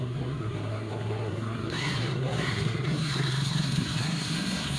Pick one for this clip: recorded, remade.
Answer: remade